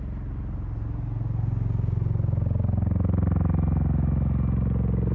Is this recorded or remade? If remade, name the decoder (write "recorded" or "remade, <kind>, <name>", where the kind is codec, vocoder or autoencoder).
recorded